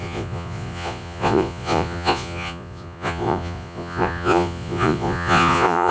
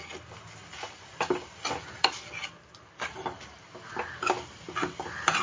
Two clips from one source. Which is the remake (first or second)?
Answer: first